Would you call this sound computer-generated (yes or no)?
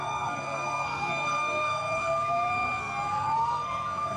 yes